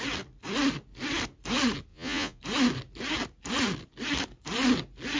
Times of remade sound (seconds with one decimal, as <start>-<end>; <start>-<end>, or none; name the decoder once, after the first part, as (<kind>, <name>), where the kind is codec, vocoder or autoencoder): 1.9-2.4 (vocoder, Vocos)